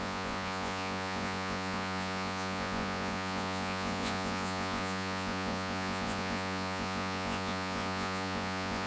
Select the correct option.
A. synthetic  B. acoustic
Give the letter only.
A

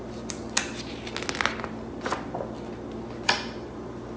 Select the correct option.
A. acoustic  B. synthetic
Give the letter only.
A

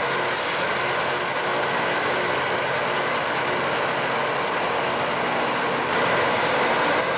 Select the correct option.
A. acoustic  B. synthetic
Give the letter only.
A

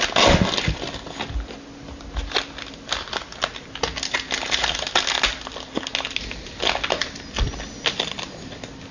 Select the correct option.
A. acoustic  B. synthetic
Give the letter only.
A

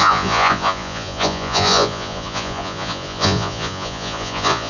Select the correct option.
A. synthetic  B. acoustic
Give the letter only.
A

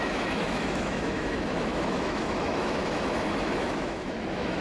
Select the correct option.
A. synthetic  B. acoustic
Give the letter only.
A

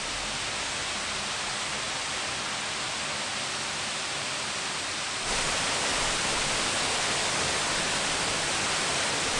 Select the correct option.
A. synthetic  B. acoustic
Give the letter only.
B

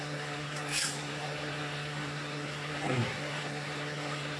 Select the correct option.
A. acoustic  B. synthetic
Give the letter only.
B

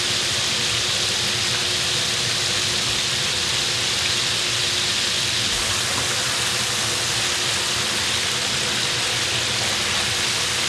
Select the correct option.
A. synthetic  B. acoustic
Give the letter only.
B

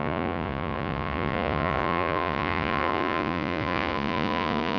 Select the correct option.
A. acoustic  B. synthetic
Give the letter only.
B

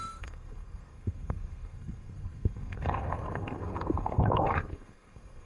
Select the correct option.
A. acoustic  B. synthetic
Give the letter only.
B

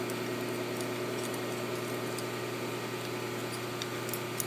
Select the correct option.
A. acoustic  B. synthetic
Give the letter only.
A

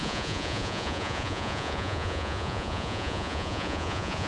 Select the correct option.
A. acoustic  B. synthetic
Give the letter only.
B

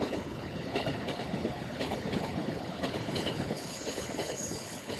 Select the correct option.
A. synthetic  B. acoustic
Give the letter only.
A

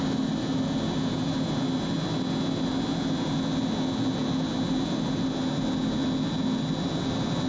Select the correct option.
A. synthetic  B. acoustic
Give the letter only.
B